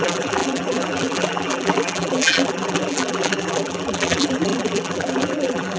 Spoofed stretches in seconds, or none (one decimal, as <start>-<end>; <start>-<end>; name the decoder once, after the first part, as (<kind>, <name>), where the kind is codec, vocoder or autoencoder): 0.0-5.8 (vocoder, BigVGAN v2)